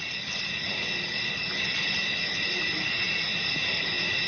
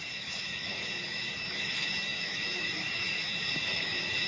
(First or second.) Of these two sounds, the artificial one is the second